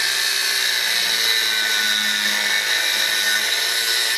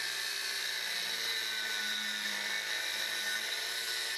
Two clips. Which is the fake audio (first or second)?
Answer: second